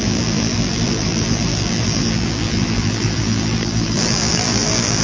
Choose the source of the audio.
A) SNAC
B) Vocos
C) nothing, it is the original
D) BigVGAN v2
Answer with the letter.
D